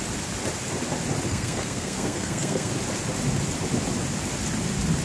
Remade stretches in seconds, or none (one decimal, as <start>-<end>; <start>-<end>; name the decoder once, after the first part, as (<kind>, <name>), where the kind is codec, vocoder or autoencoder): 1.3-2.7 (codec, SNAC)